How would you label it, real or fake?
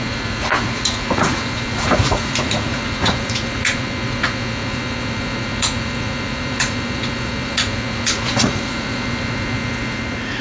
fake